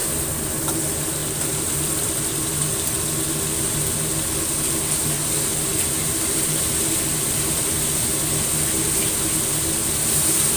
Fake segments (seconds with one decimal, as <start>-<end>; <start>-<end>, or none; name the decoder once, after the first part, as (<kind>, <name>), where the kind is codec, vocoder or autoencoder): 1.2-1.7 (vocoder, BigVGAN v2); 5.7-6.6